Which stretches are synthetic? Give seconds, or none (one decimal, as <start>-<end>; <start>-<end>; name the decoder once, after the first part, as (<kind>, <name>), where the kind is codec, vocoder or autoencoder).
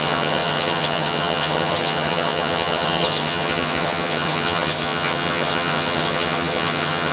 0.0-7.1 (vocoder, HiFi-GAN)